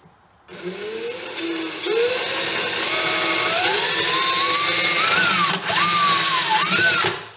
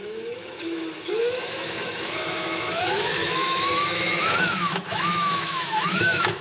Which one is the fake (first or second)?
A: second